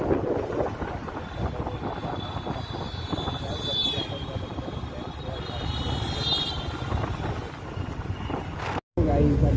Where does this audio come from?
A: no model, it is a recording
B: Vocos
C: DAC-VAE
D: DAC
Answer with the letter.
A